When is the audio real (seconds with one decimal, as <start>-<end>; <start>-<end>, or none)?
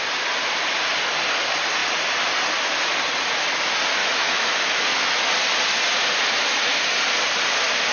0.0-4.0; 5.3-7.9